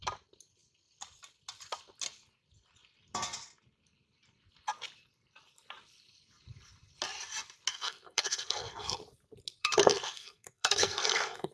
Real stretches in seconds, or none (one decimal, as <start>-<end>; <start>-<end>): 0.0-7.7; 9.0-9.6